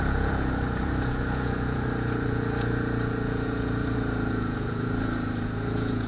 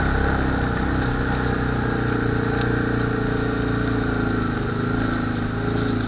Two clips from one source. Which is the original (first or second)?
second